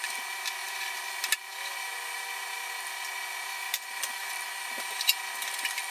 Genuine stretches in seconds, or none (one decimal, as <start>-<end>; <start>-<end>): 0.0-5.9